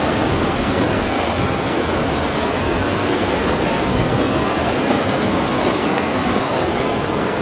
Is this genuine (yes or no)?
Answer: no